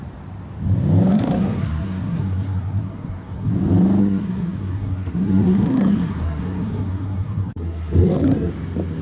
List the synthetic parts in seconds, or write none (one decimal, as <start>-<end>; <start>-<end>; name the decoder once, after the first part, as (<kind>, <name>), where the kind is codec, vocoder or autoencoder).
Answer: 1.1-3.5 (codec, SNAC); 4.0-8.5